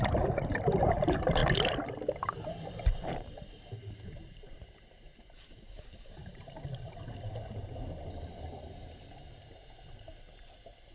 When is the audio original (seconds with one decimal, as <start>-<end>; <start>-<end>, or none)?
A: 1.4-2.4